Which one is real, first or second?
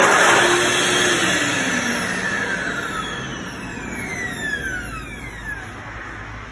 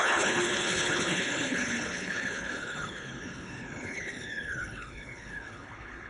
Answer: first